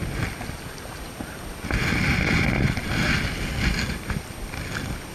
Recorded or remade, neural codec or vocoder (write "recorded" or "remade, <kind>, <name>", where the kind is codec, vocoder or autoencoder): recorded